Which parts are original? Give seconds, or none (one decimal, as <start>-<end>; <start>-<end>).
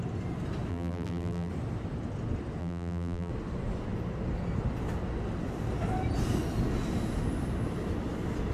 0.0-0.7; 1.5-2.6; 3.3-8.5